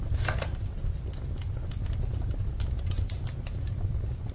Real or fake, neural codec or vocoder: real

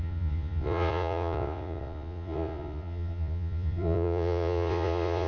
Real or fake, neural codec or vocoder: fake, vocoder, Vocos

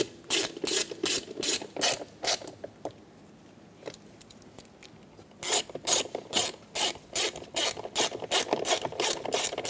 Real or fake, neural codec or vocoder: real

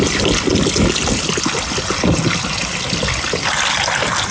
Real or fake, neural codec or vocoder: real